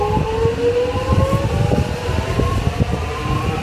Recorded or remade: recorded